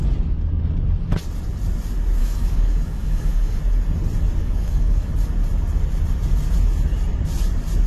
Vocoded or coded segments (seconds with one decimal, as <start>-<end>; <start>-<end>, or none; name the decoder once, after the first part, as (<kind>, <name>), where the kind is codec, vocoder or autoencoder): 2.2-3.6 (codec, DAC); 4.4-5.1